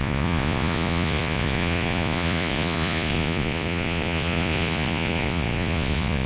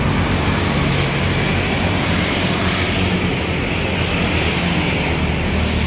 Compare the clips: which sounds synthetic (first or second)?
first